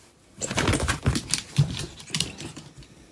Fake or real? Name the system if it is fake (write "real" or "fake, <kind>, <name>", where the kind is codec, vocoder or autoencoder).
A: fake, vocoder, BigVGAN v2